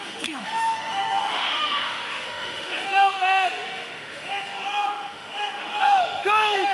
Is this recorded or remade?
remade